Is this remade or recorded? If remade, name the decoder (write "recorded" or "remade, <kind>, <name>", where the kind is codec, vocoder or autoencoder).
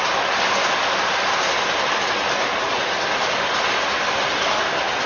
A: recorded